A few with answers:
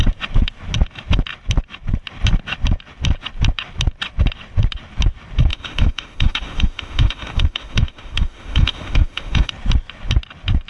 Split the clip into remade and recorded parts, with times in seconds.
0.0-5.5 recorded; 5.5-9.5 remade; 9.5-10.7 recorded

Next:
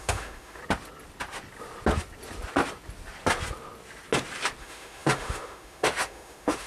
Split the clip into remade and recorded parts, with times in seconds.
0.0-0.6 remade; 0.6-4.6 recorded; 4.6-6.7 remade

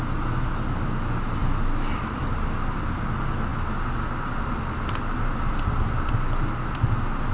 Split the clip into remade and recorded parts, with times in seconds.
0.0-7.3 recorded

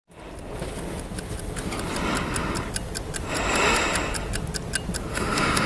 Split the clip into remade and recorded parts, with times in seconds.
0.0-5.1 recorded; 5.1-5.7 remade

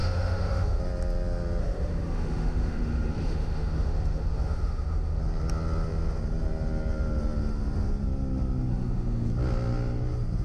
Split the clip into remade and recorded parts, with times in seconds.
0.0-0.8 remade; 0.8-1.6 recorded; 1.6-5.2 remade; 5.2-8.7 recorded; 8.7-9.3 remade; 9.3-10.4 recorded

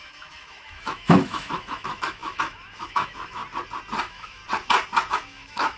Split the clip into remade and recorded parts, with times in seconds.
0.0-3.4 remade; 3.4-4.0 recorded; 4.0-4.4 remade; 4.4-5.1 recorded; 5.1-5.8 remade

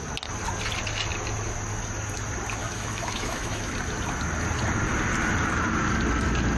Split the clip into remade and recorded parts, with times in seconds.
0.0-2.6 recorded; 2.6-3.7 remade; 3.7-6.6 recorded

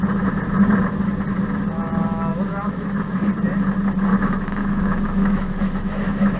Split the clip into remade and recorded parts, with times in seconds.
0.0-2.3 recorded; 2.3-3.3 remade; 3.3-4.1 recorded; 4.1-6.4 remade